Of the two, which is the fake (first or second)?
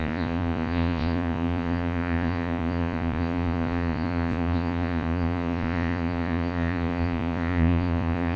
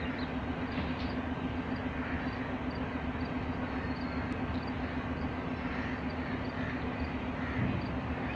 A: first